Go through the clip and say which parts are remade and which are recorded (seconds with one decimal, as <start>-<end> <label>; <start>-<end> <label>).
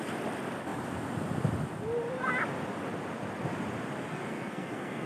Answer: 0.0-4.1 recorded; 4.1-5.1 remade